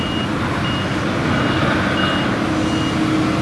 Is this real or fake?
real